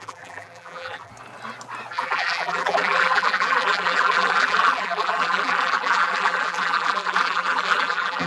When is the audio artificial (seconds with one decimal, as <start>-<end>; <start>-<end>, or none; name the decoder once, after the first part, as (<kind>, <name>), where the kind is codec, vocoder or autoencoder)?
0.0-1.1 (vocoder, BigVGAN v2); 1.9-8.3